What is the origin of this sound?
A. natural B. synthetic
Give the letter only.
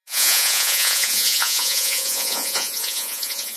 B